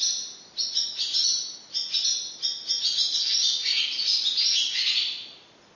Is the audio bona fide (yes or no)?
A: yes